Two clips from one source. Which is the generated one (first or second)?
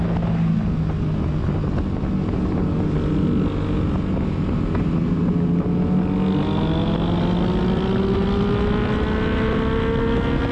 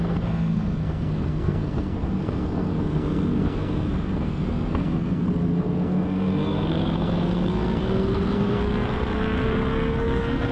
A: second